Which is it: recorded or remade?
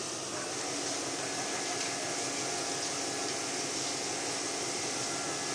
recorded